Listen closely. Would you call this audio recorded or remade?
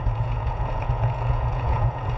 remade